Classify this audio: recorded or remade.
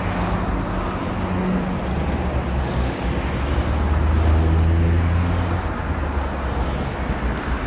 recorded